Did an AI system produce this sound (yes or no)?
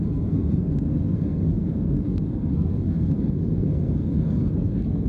yes